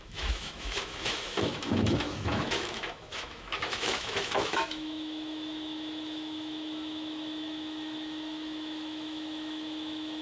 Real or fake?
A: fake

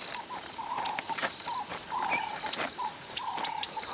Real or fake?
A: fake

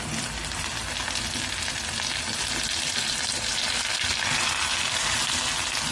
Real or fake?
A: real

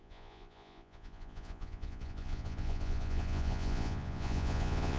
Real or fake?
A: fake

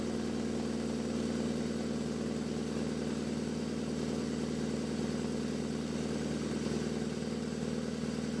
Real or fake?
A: real